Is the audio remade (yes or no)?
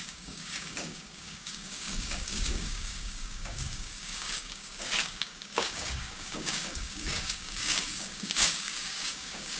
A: yes